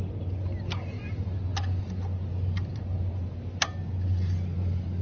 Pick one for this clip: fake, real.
real